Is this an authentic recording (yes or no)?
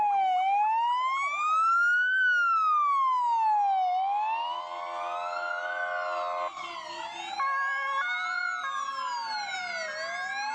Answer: yes